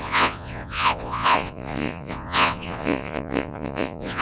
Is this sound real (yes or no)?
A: no